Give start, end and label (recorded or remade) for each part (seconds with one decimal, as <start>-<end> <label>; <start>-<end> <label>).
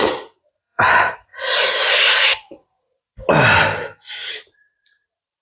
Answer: 0.0-1.3 remade; 1.3-1.8 recorded; 1.8-2.3 remade; 2.3-4.1 recorded; 4.1-5.4 remade